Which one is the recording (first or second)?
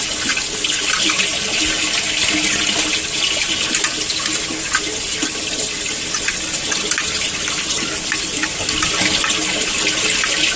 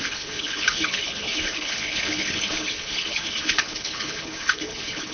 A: first